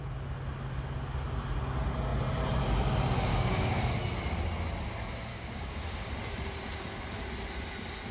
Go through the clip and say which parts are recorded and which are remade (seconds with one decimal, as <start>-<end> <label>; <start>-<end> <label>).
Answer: 0.0-3.3 recorded; 3.3-3.9 remade; 3.9-5.3 recorded; 5.3-6.1 remade; 6.1-8.1 recorded